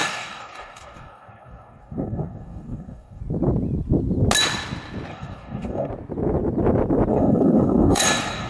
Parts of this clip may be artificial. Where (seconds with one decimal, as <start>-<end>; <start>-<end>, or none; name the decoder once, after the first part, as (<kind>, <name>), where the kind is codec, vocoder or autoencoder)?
0.0-3.2 (codec, DAC); 5.1-5.9; 7.1-8.5